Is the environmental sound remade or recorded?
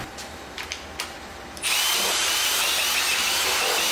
remade